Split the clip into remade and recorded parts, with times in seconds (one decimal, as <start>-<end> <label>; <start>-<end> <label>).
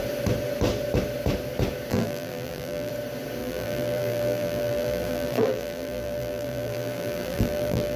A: 0.0-1.9 recorded; 1.9-2.9 remade; 2.9-3.4 recorded; 3.4-8.0 remade